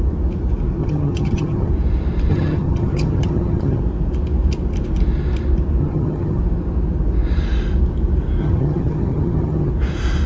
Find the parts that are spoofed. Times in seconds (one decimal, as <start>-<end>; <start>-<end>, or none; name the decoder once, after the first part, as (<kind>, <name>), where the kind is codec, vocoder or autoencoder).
0.8-1.7 (vocoder, HiFi-GAN); 2.3-3.8; 5.8-6.4; 8.4-9.7